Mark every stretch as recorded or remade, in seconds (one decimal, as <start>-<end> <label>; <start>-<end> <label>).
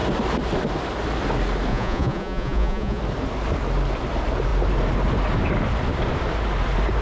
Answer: 0.0-1.7 recorded; 1.7-3.0 remade; 3.0-7.0 recorded